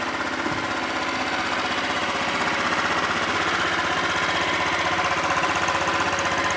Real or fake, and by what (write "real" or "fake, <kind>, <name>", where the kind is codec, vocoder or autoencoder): real